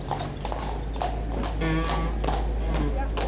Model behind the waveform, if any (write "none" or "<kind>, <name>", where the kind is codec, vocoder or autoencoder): none